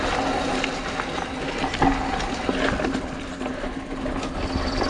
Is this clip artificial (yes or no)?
no